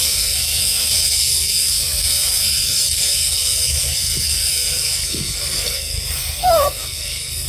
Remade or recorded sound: remade